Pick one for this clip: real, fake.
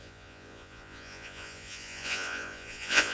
fake